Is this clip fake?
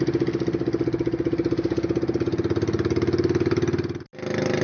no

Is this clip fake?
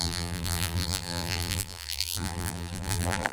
yes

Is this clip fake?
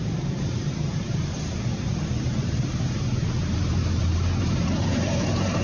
yes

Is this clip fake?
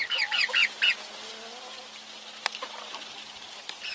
no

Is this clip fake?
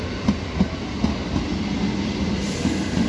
no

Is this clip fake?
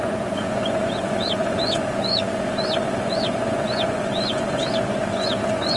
yes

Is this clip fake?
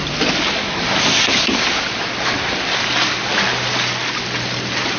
no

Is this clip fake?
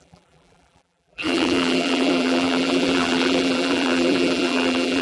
yes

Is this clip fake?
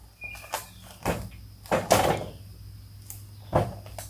no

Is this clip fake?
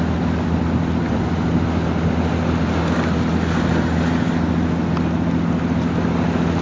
no